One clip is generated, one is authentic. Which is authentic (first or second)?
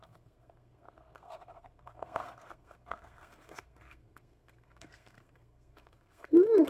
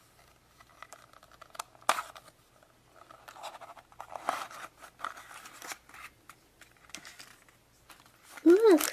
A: second